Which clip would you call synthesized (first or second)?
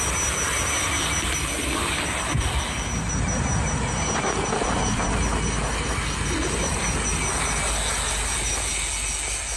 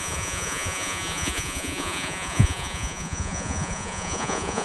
second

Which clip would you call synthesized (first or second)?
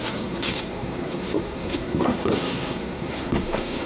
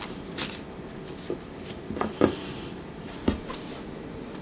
first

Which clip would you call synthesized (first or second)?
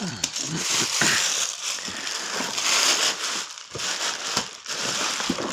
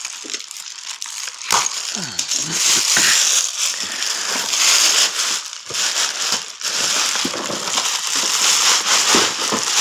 first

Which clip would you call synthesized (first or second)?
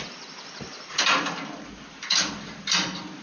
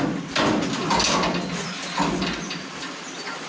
first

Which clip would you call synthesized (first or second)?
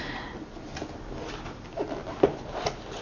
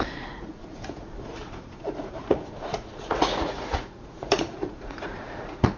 second